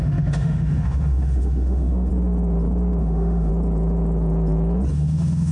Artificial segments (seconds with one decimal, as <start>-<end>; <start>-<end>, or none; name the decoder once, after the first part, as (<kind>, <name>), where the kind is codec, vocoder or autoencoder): 0.0-2.1 (autoencoder, DAC-VAE); 3.0-3.5; 4.9-5.5